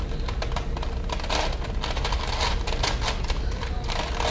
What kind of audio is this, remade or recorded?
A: recorded